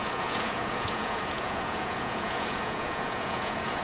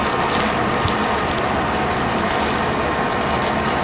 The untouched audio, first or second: second